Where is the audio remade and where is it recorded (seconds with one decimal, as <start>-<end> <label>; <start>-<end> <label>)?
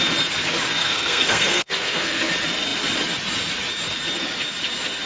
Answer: 0.0-0.8 recorded; 0.8-2.3 remade; 2.3-5.1 recorded